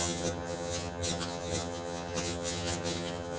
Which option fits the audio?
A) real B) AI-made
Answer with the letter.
B